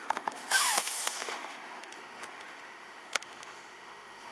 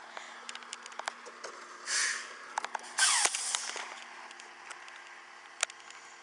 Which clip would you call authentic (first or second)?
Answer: second